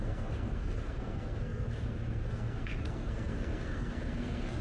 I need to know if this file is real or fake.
fake